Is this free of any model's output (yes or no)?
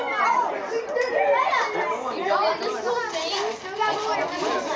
yes